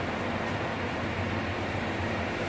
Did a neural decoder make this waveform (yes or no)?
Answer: no